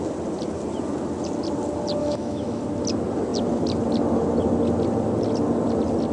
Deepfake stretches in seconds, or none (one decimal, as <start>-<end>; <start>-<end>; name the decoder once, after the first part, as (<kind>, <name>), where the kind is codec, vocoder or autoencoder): 2.0-2.6 (autoencoder, DAC-VAE)